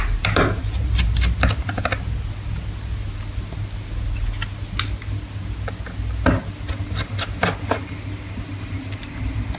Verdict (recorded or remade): recorded